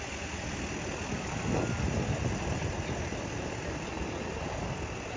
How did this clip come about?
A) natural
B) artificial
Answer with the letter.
A